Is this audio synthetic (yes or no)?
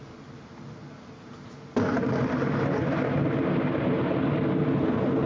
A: no